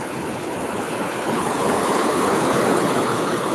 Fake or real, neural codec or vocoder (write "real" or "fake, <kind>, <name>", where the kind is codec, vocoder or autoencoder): fake, codec, HILCodec